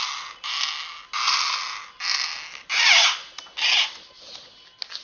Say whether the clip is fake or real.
real